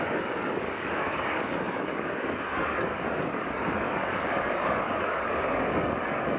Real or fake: fake